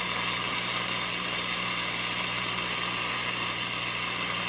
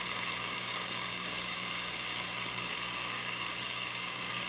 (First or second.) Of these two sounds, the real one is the first